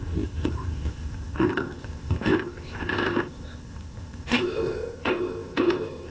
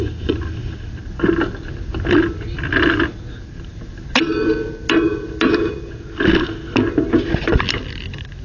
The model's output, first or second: first